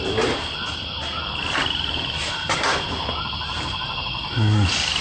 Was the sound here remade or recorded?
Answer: recorded